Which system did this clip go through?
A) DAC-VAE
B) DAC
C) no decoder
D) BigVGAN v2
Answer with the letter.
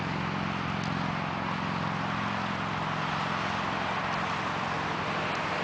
C